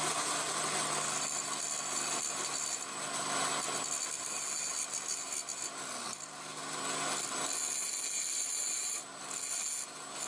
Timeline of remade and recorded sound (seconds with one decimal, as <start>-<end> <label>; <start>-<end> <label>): 0.0-10.3 recorded